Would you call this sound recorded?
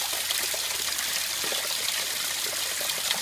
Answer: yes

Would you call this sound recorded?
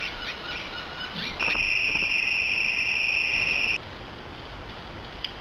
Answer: yes